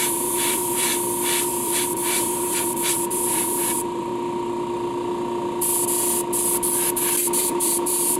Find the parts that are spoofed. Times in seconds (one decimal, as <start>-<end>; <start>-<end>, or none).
0.0-0.9; 1.5-4.1; 7.4-8.2